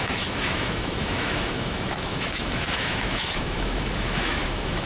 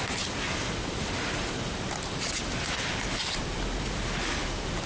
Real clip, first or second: second